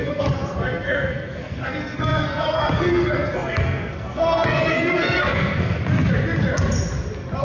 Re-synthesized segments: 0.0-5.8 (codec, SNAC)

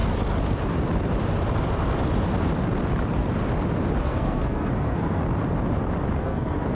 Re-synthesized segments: 4.0-5.2 (codec, SNAC); 6.2-6.7

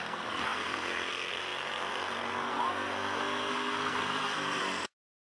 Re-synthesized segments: 0.0-5.2 (codec, SNAC)

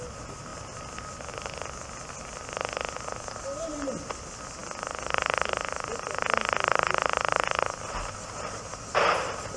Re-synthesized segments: none

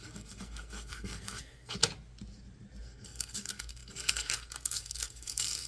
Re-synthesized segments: 0.0-1.8 (codec, SNAC); 2.8-5.7

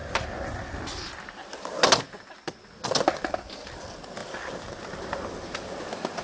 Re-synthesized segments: none

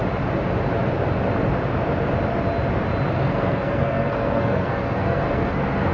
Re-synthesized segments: 3.1-5.9 (codec, SNAC)

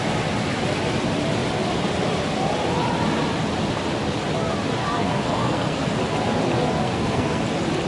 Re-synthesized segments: 4.8-6.0 (codec, SNAC); 6.8-7.4